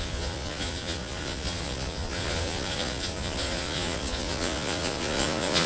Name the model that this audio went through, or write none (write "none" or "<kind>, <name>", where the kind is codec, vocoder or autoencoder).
vocoder, Vocos